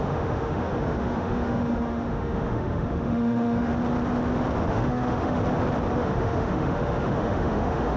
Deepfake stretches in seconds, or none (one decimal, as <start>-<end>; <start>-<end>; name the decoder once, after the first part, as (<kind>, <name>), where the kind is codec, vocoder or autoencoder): 0.0-3.7 (autoencoder, DAC-VAE); 4.6-5.4; 5.9-8.0